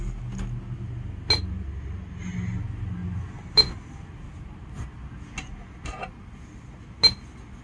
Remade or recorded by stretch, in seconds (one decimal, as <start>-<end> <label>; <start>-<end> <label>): 0.0-7.6 recorded